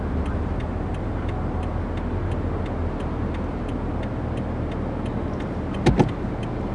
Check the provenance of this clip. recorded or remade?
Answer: recorded